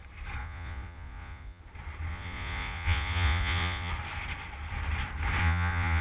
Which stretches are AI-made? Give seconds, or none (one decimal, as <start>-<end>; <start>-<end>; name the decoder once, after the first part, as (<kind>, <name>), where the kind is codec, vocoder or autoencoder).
0.4-1.6 (vocoder, Vocos); 2.1-3.9; 5.4-6.0